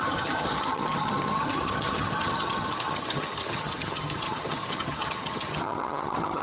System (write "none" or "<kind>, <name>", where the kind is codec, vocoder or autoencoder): vocoder, HiFi-GAN